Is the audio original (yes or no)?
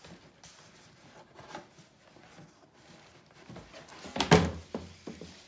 yes